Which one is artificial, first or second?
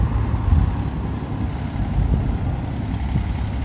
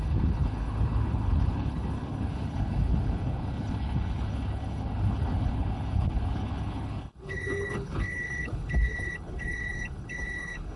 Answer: second